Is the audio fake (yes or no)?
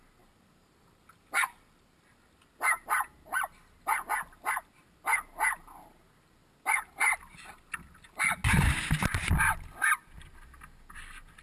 no